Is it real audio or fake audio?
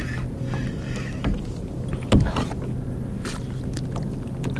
real